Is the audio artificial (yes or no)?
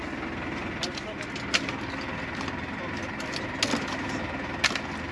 no